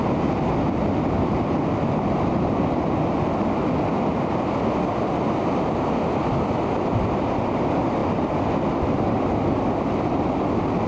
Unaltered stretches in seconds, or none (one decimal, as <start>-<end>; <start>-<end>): 0.0-10.9